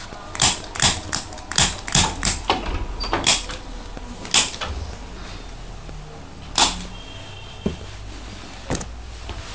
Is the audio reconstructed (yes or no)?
no